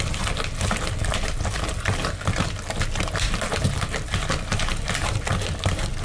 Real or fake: real